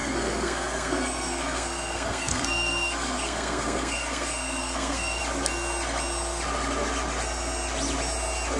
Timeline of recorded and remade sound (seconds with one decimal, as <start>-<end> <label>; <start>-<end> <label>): 0.0-5.2 remade; 5.2-8.6 recorded